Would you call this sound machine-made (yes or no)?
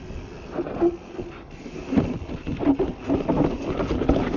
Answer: no